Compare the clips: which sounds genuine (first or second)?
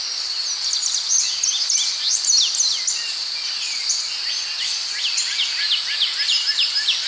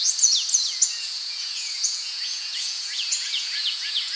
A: first